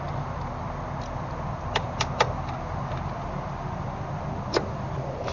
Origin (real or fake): real